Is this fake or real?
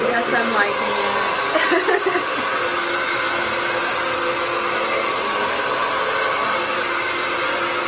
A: real